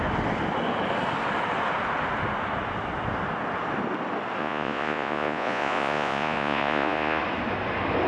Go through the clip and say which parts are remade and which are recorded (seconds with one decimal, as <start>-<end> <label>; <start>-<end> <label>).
0.0-4.4 recorded; 4.4-7.2 remade; 7.2-8.1 recorded